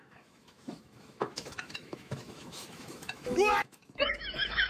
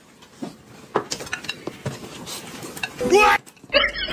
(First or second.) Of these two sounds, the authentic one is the second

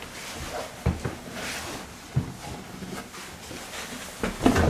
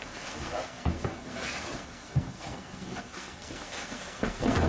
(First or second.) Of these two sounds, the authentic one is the first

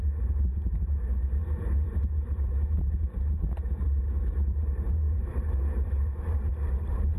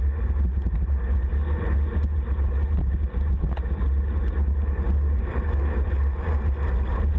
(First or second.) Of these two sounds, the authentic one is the second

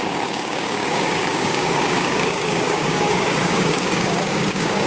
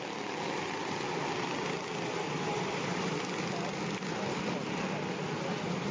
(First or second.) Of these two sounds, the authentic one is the second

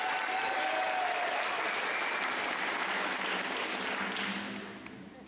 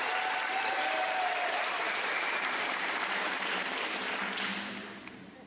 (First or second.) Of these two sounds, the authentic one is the first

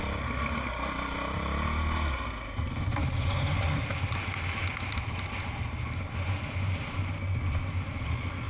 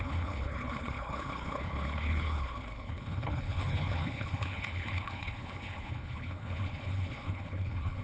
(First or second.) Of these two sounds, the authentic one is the first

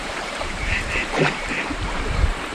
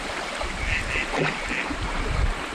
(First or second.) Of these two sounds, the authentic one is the second